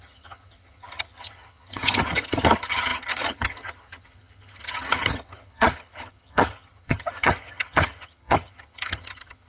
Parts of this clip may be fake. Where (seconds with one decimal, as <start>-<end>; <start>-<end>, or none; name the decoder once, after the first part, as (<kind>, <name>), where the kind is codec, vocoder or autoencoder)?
0.0-9.5 (vocoder, HiFi-GAN)